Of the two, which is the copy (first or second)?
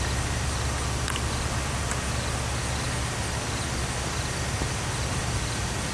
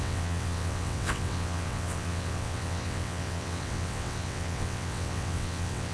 second